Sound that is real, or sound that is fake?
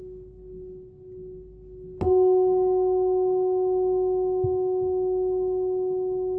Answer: real